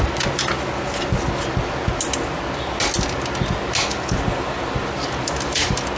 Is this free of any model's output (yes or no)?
yes